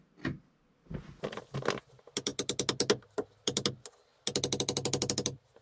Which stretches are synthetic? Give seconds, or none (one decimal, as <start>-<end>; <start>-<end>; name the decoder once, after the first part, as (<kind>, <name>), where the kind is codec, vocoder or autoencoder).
none